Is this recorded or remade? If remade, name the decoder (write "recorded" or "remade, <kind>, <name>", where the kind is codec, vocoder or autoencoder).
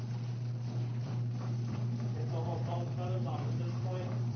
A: remade, vocoder, BigVGAN v2